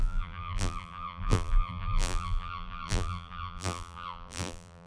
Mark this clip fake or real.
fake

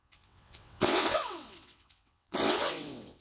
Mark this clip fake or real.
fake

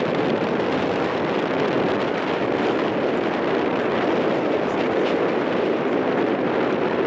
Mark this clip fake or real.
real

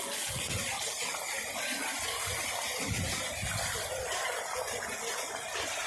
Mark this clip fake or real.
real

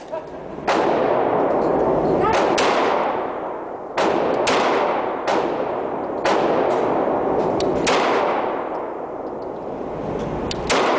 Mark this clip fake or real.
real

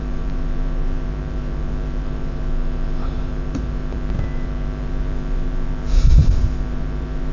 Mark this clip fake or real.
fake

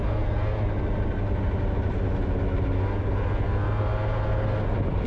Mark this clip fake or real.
real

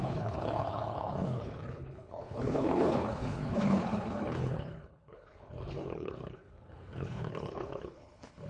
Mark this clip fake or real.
fake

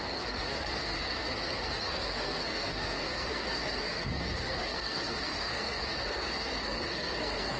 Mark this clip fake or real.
fake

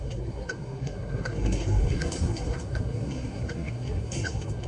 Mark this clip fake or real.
fake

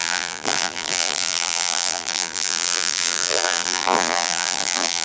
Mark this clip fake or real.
fake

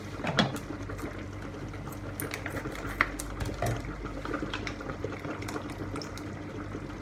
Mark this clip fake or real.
real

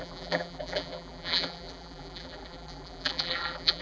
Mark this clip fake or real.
fake